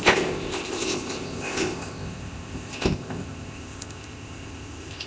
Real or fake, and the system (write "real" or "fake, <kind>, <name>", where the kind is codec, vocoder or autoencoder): fake, codec, ZipCodec